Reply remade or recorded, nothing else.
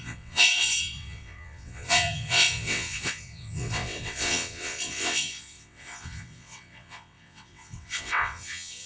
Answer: remade